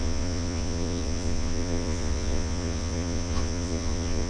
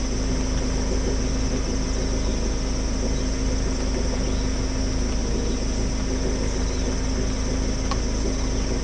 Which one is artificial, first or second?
first